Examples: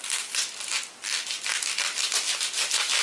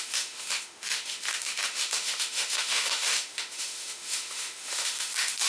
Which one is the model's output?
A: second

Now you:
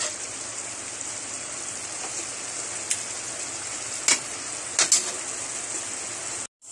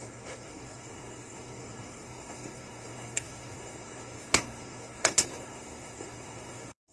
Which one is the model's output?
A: second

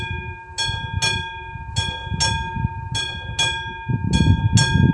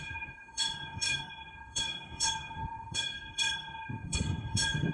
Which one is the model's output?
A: second